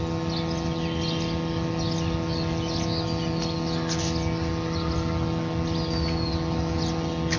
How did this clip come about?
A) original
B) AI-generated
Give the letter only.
A